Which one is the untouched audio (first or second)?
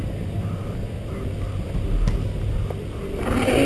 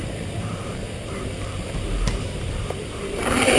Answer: first